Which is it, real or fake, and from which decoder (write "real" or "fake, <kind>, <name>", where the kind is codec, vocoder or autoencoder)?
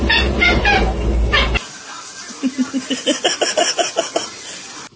real